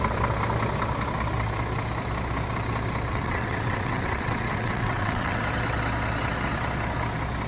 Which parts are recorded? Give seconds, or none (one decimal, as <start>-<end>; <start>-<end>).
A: 0.0-3.1; 5.4-7.5